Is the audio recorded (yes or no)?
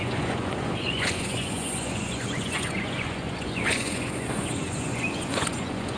no